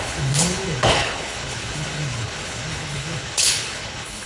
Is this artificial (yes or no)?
yes